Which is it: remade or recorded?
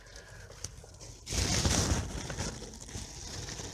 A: recorded